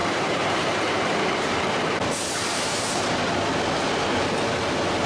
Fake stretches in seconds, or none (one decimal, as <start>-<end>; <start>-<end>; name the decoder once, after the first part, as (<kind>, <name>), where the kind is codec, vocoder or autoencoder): 0.0-3.1 (vocoder, BigVGAN v2)